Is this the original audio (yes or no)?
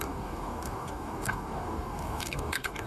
no